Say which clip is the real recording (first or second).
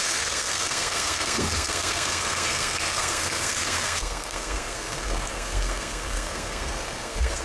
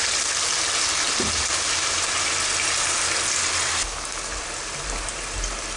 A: second